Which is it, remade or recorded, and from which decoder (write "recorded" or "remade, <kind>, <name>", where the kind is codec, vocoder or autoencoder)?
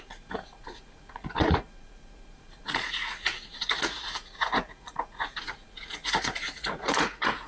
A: remade, vocoder, Vocos